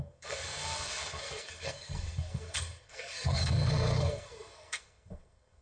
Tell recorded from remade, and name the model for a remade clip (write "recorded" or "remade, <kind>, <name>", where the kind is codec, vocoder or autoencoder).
remade, codec, SNAC